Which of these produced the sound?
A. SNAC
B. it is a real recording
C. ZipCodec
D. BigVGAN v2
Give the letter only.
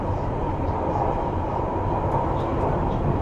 B